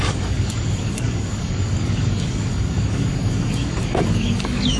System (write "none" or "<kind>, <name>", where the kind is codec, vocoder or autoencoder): codec, DAC